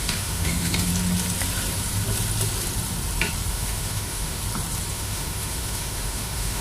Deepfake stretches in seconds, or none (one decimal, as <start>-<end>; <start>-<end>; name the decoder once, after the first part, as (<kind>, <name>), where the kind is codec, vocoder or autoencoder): 0.0-0.9 (autoencoder, DAC-VAE); 3.5-4.4; 4.9-6.6